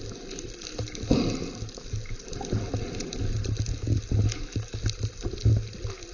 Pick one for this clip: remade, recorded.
recorded